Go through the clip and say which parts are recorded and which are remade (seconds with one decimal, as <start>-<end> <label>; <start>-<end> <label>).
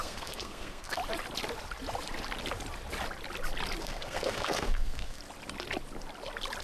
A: 0.0-1.0 remade; 1.0-3.8 recorded; 3.8-5.2 remade; 5.2-6.6 recorded